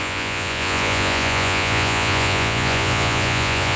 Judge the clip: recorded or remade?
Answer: remade